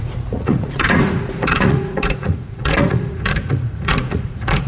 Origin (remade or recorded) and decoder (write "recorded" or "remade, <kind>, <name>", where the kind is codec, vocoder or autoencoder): remade, vocoder, Vocos